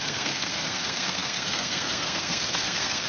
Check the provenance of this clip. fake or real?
fake